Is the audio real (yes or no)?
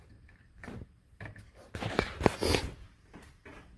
yes